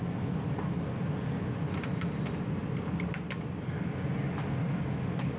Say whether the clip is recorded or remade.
recorded